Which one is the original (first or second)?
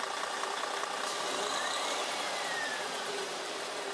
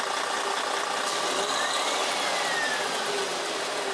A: second